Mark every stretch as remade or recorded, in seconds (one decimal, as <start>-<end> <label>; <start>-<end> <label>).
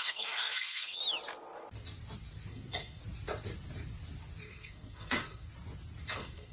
0.0-1.0 remade; 1.0-2.5 recorded; 2.5-3.0 remade; 3.0-4.4 recorded; 4.4-5.5 remade; 5.5-6.1 recorded; 6.1-6.5 remade